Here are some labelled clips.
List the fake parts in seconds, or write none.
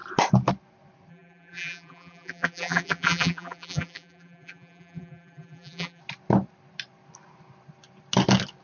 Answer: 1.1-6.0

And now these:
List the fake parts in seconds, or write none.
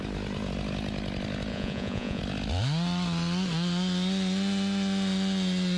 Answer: 1.5-2.2